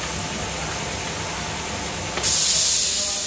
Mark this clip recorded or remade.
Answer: recorded